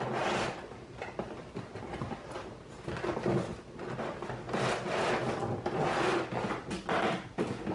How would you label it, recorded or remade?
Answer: recorded